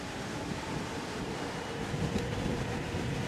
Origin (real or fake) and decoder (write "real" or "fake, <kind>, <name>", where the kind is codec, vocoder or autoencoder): fake, vocoder, BigVGAN v2